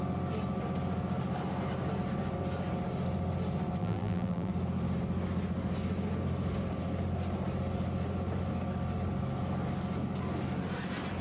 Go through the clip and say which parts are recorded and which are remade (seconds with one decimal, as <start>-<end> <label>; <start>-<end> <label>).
0.0-3.8 recorded; 3.8-4.5 remade; 4.5-11.2 recorded